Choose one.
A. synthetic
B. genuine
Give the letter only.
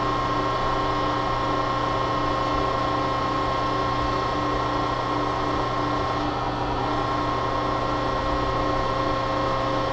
B